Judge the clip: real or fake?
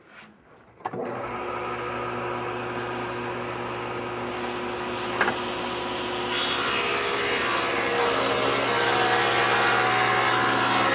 real